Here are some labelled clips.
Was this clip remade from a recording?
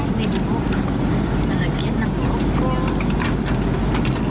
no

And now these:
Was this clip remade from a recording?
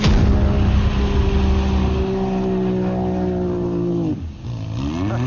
no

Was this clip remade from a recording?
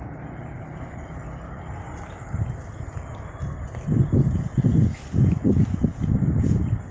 no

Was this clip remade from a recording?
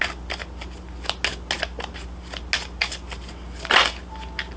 no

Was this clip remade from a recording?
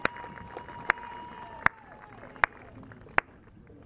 no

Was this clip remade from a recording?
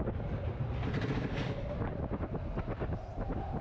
no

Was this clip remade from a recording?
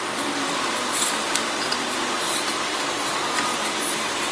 yes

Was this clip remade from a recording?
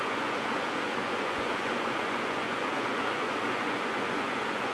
yes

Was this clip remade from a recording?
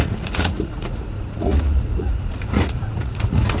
yes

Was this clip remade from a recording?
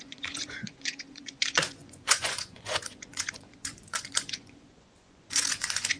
yes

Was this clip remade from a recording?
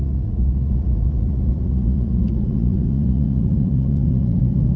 yes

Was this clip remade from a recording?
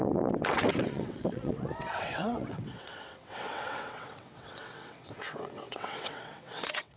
yes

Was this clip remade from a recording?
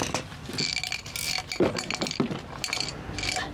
no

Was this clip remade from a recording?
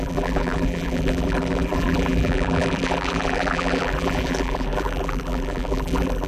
yes